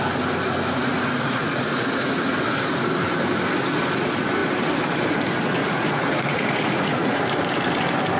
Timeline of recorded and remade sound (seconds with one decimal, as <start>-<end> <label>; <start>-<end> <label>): 0.0-0.8 recorded; 0.8-2.4 remade; 2.4-5.6 recorded; 5.6-7.2 remade; 7.2-8.2 recorded